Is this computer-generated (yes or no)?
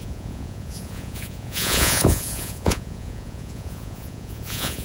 yes